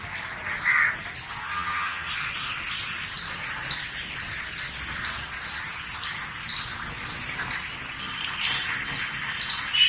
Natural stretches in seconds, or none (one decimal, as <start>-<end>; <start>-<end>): 0.0-1.4; 2.1-9.9